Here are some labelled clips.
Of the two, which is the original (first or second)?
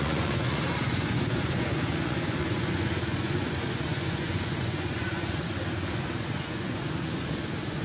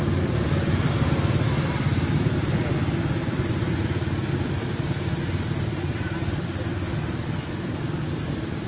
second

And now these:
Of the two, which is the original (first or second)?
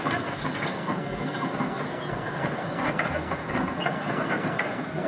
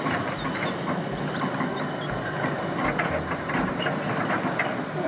second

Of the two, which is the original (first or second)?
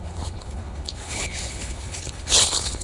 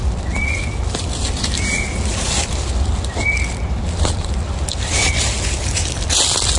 second